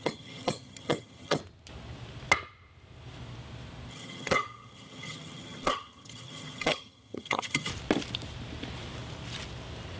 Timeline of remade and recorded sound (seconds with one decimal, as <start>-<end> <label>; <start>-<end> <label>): 0.0-1.4 remade; 1.4-3.9 recorded; 3.9-7.7 remade; 7.7-10.0 recorded